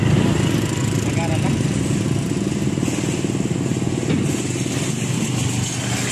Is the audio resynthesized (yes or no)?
no